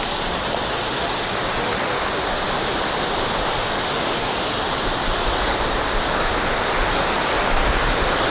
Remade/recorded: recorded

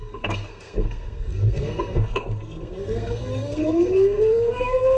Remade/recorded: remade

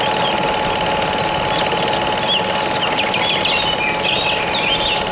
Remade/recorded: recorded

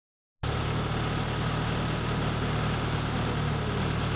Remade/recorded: recorded